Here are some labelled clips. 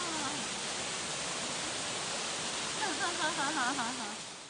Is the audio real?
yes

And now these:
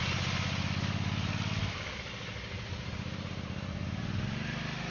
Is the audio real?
yes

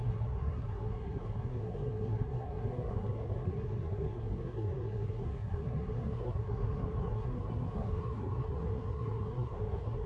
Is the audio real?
no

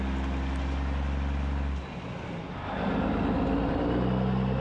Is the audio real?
yes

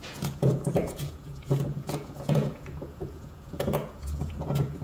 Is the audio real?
no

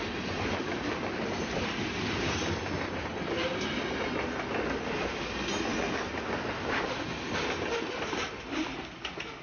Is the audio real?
yes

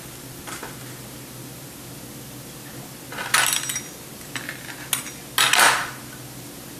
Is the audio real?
yes